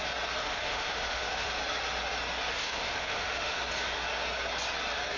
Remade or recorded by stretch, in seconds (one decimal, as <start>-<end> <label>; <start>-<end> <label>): 0.0-0.4 recorded; 0.4-1.5 remade; 1.5-2.6 recorded; 2.6-3.6 remade; 3.6-5.2 recorded